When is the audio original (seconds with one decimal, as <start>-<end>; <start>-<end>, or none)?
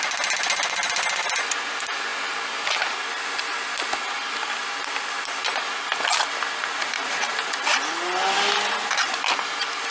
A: 0.0-9.9